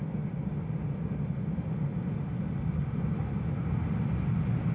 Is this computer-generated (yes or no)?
no